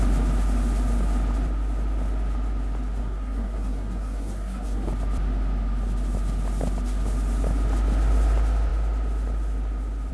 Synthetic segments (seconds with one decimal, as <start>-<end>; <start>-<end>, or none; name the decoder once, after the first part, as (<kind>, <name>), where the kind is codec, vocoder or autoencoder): 3.0-4.9 (codec, SNAC)